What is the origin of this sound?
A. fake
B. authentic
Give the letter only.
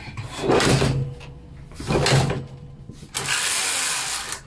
B